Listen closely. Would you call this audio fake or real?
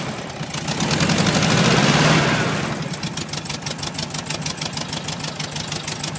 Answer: real